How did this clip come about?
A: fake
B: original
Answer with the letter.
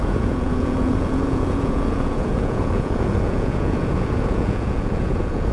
A